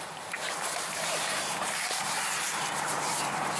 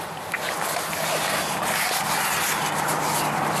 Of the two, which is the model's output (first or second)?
first